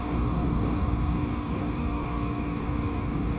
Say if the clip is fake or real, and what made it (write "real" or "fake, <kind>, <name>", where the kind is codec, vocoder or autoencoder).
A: fake, codec, DAC